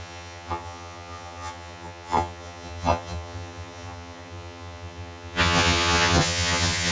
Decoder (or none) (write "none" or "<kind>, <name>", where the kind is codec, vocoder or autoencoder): vocoder, HiFi-GAN